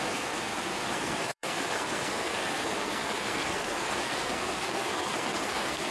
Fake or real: fake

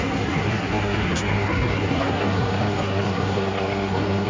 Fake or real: fake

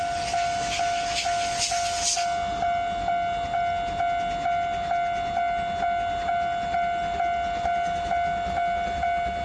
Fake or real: real